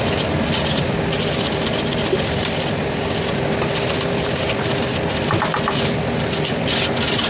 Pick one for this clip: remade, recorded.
recorded